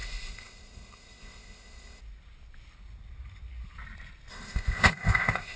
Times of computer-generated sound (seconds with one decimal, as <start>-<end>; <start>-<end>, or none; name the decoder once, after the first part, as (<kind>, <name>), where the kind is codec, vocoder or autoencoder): 0.0-2.0 (codec, ZipCodec); 4.3-5.6